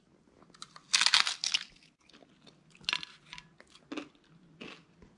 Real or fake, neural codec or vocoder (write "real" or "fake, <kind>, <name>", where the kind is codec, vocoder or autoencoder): real